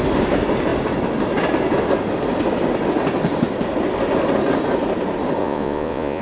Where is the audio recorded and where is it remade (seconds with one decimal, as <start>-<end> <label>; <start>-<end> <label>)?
0.0-5.4 recorded; 5.4-6.2 remade